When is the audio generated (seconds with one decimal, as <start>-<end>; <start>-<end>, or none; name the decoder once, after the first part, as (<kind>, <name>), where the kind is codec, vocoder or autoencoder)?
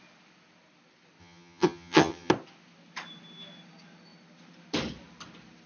1.2-2.3 (vocoder, HiFi-GAN)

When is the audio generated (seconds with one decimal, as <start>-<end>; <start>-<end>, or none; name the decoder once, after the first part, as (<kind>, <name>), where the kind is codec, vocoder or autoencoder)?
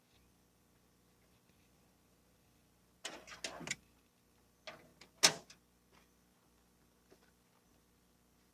none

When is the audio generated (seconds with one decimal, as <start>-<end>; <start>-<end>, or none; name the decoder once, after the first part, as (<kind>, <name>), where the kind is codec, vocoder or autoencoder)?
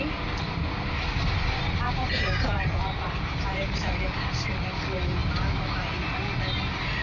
none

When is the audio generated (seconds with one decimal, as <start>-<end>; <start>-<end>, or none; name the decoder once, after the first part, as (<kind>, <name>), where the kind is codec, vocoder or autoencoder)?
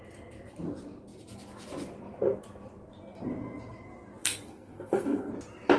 4.2-5.3 (codec, SNAC)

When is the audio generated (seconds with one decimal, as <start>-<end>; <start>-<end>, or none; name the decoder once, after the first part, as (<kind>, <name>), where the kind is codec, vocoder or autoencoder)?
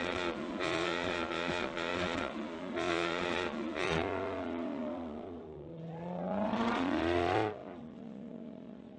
0.0-9.0 (vocoder, Vocos)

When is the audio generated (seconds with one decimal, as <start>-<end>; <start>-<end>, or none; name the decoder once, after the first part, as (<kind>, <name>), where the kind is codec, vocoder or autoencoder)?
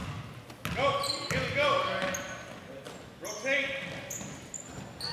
none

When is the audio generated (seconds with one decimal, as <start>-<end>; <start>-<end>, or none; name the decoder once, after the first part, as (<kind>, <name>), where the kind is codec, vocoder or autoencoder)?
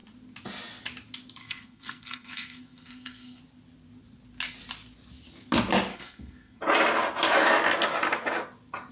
1.4-3.4 (codec, SNAC); 5.9-6.6